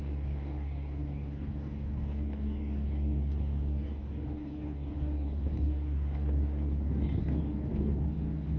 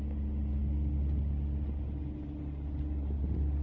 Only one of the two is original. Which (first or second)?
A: second